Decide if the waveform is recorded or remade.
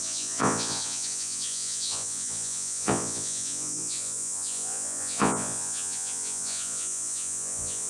remade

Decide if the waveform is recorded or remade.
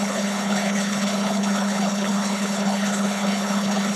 remade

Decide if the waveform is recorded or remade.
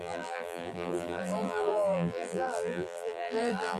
remade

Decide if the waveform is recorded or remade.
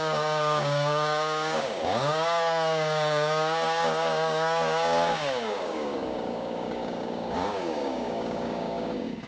remade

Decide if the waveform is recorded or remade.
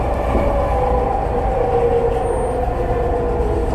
recorded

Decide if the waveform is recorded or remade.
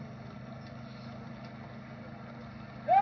recorded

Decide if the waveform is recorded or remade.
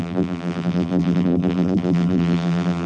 remade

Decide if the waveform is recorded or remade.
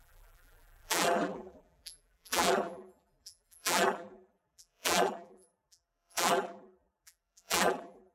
remade